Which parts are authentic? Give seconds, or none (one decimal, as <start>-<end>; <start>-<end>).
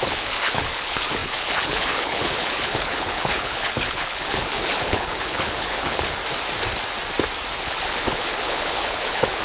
6.2-7.6